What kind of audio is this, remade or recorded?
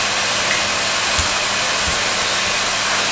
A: recorded